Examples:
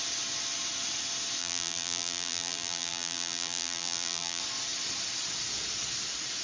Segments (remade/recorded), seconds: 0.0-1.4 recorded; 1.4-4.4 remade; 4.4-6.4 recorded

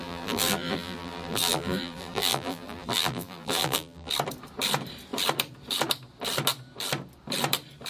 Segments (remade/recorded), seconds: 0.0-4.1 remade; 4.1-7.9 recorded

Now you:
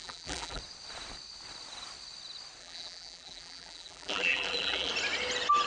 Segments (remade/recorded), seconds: 0.0-0.6 remade; 0.6-2.6 recorded; 2.6-4.9 remade; 4.9-5.7 recorded